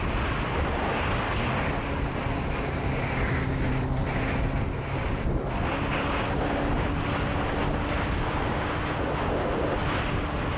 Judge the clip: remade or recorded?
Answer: recorded